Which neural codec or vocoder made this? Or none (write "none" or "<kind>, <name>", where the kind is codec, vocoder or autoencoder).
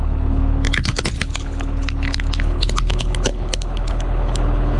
codec, HILCodec